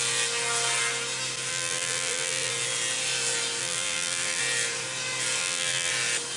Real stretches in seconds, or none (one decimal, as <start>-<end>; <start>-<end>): 0.0-1.5; 2.5-3.6; 4.4-5.4; 5.9-6.4